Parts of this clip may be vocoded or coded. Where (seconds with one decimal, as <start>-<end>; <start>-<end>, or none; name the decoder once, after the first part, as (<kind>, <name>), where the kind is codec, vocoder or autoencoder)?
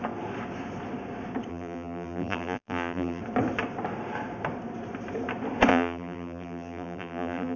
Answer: 1.5-3.2 (vocoder, BigVGAN v2); 5.7-7.6